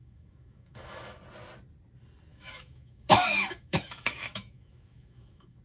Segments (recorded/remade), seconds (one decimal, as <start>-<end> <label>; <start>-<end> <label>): 0.0-1.2 remade; 1.2-2.3 recorded; 2.3-5.6 remade